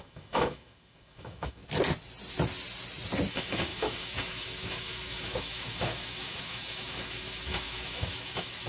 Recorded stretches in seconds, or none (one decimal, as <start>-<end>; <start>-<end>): 1.6-3.3